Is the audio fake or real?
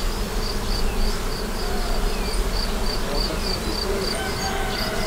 real